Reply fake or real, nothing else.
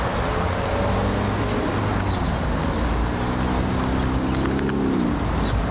real